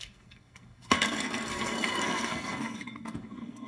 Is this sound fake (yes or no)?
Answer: yes